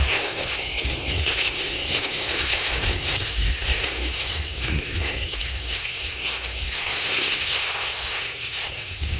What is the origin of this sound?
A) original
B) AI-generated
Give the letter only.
B